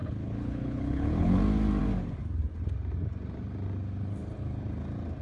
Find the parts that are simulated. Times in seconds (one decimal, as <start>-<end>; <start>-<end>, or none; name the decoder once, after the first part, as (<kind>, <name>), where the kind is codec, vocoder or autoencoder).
0.0-1.4 (codec, HILCodec)